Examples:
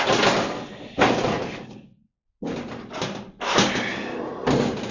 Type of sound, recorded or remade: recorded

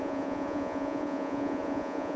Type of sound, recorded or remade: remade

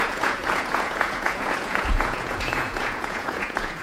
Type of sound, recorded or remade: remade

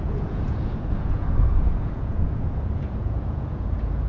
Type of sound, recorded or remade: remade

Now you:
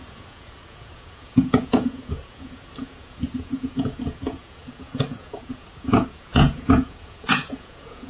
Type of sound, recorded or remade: remade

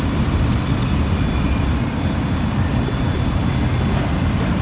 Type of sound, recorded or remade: recorded